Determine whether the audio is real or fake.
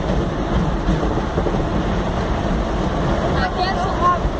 real